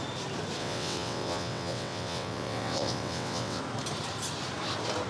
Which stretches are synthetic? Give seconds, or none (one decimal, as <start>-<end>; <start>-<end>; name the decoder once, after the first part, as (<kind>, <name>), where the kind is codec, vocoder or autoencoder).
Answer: 0.6-3.6 (vocoder, WaveNeXt)